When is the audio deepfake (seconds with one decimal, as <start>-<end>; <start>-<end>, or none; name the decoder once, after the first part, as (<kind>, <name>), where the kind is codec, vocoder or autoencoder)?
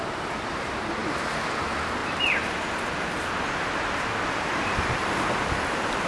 none